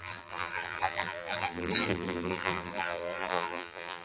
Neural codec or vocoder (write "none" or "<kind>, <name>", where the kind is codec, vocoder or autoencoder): vocoder, BigVGAN v2